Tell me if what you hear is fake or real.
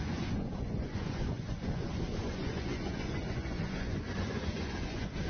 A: fake